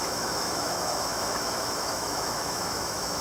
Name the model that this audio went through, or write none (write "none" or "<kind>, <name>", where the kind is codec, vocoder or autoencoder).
autoencoder, DAC-VAE